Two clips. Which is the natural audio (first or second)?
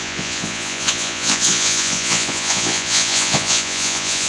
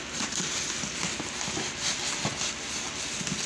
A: second